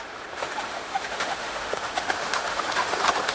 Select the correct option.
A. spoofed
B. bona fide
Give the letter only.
A